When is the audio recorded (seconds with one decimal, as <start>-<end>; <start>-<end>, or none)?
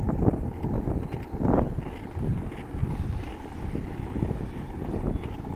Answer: 0.0-5.6